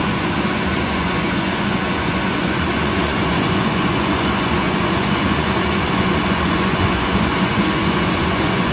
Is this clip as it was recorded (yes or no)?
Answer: no